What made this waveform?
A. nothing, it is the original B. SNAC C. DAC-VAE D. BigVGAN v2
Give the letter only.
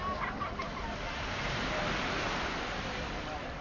A